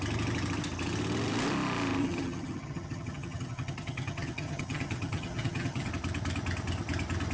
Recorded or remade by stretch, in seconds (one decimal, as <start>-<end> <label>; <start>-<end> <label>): 0.0-2.0 recorded; 2.0-5.9 remade; 5.9-7.3 recorded